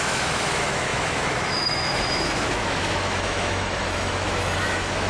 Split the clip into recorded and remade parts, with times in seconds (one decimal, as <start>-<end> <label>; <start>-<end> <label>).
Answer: 0.0-5.1 remade